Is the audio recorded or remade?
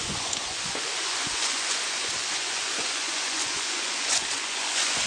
remade